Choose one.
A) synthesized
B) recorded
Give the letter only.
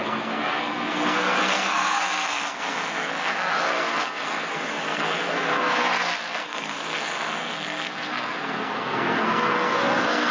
A